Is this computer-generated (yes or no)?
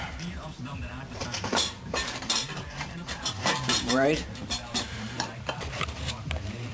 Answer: yes